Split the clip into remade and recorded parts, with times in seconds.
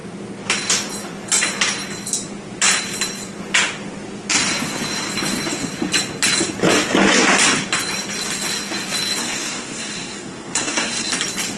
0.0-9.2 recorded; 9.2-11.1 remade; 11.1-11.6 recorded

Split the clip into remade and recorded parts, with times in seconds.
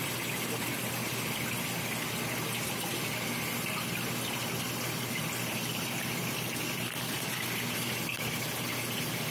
0.0-9.3 recorded